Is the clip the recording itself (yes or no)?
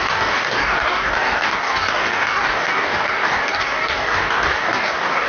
no